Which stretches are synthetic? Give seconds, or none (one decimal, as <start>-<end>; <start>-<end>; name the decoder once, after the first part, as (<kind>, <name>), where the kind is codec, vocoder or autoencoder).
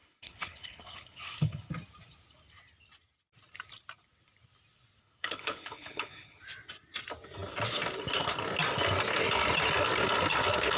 0.0-1.7 (codec, HILCodec); 5.0-6.4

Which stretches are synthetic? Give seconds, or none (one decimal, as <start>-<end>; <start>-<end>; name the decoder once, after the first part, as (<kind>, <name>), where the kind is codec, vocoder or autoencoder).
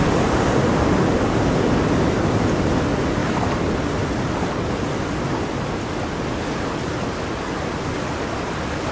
none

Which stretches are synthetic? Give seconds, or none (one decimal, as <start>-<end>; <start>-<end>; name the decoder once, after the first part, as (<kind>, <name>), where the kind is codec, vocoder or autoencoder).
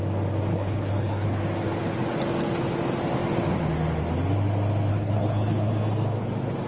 0.5-1.4 (codec, HILCodec); 4.9-5.7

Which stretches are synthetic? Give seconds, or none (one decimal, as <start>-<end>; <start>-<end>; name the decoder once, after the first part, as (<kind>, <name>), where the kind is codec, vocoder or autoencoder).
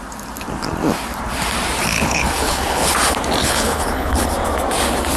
1.9-2.9 (codec, HILCodec); 3.4-4.3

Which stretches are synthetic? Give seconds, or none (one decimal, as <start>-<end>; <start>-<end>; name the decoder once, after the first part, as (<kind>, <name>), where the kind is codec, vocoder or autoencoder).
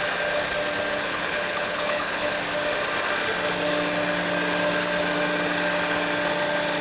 0.9-2.3 (codec, HILCodec)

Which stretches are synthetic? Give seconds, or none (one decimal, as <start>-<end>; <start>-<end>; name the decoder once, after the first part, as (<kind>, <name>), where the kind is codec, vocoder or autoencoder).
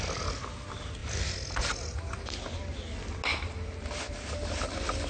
none